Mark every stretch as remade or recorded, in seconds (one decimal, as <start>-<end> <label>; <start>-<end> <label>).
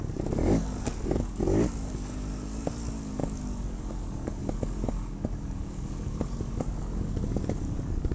0.0-8.1 remade